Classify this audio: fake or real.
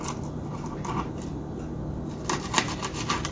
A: real